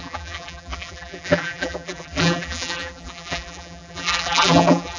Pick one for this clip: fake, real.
fake